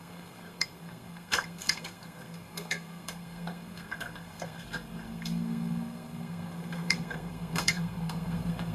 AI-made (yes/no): yes